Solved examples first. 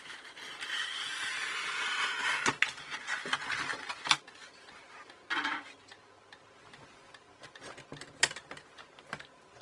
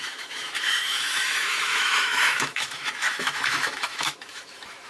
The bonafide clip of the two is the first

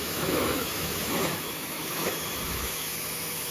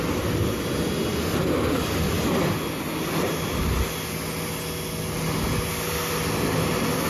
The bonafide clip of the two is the second